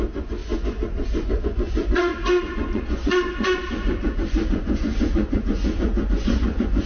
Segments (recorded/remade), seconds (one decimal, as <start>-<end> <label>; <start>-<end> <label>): 0.0-6.9 remade